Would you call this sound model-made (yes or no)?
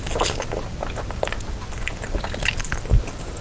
no